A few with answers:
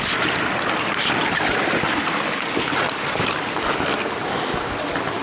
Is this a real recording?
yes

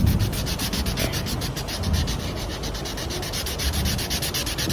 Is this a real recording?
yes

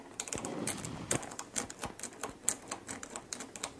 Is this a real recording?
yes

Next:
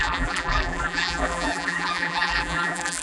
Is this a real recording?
no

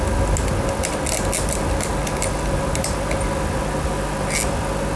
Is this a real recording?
yes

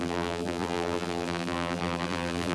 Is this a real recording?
no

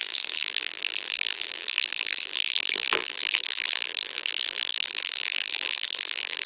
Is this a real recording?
no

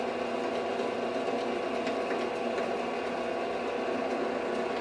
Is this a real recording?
yes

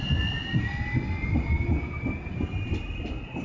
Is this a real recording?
yes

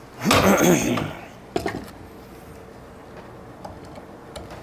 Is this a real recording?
yes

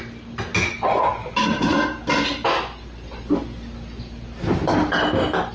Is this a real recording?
yes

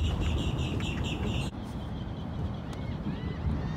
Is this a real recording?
no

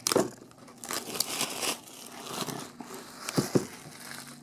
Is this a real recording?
yes